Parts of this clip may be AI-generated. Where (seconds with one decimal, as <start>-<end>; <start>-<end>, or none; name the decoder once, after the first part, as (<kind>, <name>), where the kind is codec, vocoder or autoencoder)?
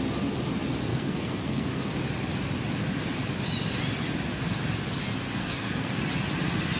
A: 0.9-1.9 (codec, SNAC); 5.4-6.0